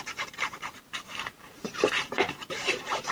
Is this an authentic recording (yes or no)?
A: no